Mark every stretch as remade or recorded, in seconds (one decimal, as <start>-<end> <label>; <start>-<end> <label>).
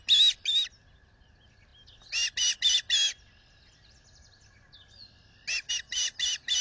0.0-6.6 recorded